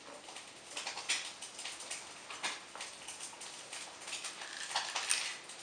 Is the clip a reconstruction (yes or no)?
no